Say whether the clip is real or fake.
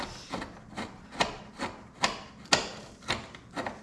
real